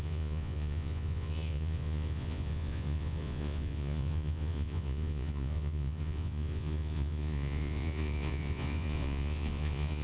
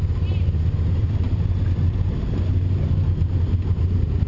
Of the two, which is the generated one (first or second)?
first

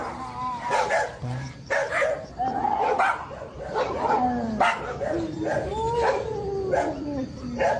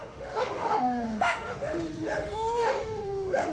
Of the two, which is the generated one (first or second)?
second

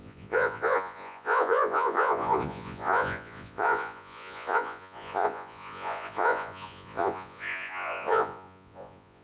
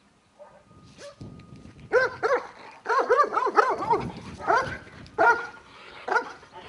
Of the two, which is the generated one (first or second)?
first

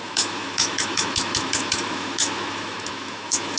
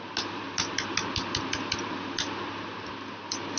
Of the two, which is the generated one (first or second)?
first